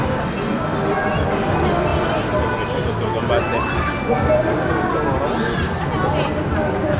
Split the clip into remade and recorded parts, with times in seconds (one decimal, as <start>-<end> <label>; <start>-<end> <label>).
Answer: 0.0-7.0 recorded